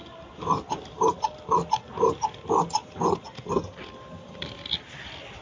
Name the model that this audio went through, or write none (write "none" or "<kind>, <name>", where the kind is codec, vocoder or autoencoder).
none